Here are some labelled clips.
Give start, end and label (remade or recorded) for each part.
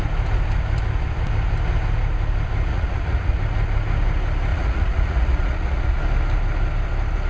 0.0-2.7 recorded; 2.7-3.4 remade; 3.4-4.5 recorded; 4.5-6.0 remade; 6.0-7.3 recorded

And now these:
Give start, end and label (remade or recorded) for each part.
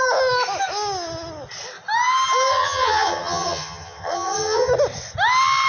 0.0-2.5 recorded; 2.5-4.7 remade; 4.7-5.7 recorded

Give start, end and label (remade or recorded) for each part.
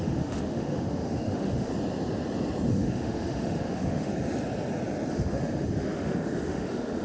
0.0-1.7 remade; 1.7-2.7 recorded; 2.7-4.1 remade; 4.1-5.1 recorded; 5.1-7.0 remade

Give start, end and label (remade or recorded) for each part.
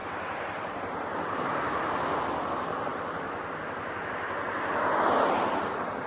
0.0-2.2 remade; 2.2-6.1 recorded